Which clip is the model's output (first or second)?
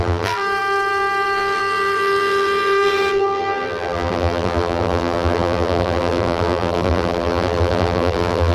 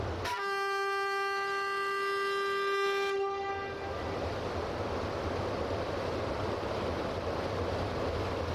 first